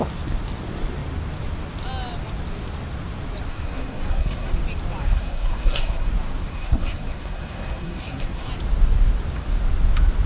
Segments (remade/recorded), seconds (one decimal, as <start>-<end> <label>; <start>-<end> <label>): 0.0-3.5 recorded; 3.5-4.5 remade; 4.5-5.0 recorded; 5.0-6.1 remade; 6.1-6.5 recorded; 6.5-8.5 remade; 8.5-10.3 recorded